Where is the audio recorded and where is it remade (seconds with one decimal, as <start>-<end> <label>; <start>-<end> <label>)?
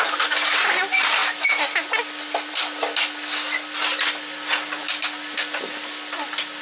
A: 0.0-6.6 recorded